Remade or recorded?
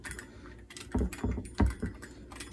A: recorded